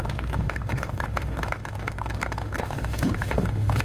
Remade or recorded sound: remade